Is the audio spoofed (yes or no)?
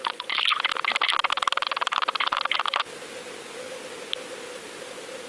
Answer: no